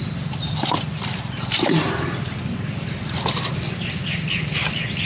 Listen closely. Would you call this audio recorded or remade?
recorded